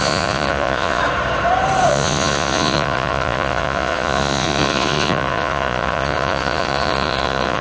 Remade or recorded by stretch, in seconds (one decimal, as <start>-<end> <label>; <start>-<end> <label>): 0.0-1.0 remade; 1.0-1.9 recorded; 1.9-7.6 remade